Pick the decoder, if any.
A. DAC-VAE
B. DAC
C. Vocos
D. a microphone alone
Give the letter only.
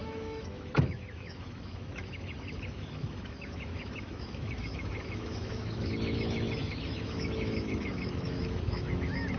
A